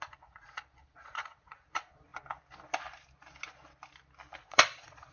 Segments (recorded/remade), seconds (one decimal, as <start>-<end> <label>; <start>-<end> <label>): 0.0-2.1 remade; 2.1-4.4 recorded; 4.4-5.1 remade